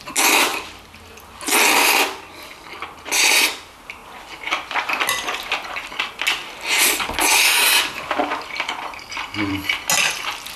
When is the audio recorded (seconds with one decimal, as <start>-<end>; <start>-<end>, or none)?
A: 0.0-10.6